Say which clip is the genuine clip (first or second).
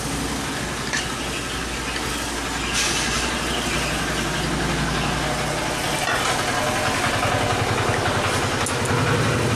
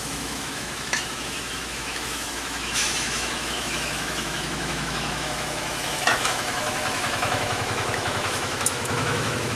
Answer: first